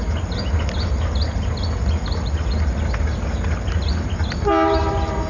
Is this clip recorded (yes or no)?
yes